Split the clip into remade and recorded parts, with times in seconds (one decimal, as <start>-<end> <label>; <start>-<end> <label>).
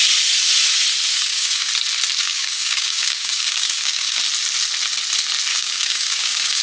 0.0-1.1 recorded; 1.1-1.7 remade; 1.7-2.2 recorded; 2.2-4.2 remade; 4.2-5.5 recorded; 5.5-6.6 remade